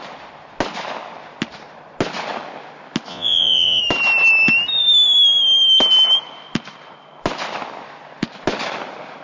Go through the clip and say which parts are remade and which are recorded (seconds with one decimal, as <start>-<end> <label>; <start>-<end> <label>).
0.0-3.1 recorded; 3.1-3.8 remade; 3.8-9.2 recorded